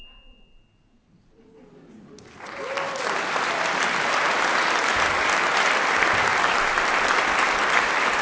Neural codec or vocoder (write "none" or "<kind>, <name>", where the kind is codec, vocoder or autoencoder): none